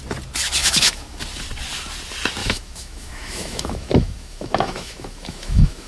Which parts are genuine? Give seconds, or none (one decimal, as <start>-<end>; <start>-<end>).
0.0-0.6; 1.2-2.4